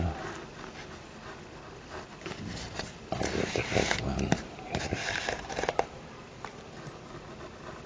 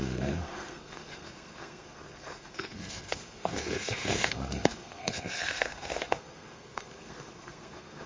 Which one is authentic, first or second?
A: first